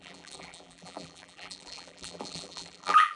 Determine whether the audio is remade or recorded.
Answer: remade